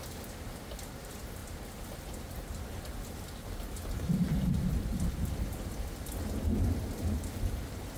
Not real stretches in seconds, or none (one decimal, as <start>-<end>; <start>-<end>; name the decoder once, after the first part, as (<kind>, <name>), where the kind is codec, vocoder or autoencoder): none